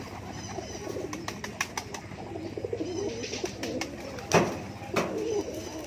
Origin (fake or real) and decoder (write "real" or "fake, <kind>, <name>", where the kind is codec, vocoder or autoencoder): real